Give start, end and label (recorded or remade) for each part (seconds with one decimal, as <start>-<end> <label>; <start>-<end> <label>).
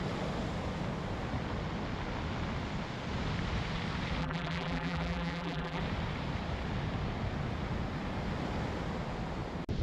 0.0-4.2 recorded; 4.2-5.8 remade; 5.8-9.8 recorded